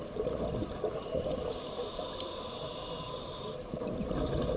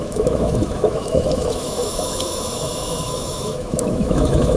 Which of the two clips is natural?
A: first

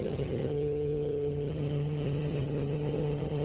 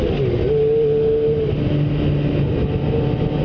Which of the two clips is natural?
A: second